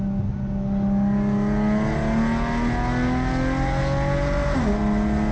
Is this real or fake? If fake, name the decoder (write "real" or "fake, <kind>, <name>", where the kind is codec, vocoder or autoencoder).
real